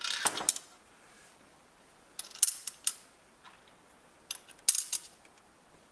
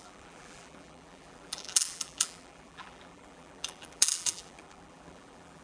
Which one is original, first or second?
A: first